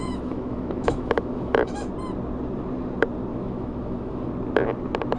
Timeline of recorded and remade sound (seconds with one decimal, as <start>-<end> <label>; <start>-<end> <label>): 0.0-1.9 remade; 1.9-3.3 recorded; 3.3-4.3 remade; 4.3-5.2 recorded